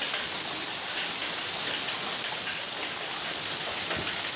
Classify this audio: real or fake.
real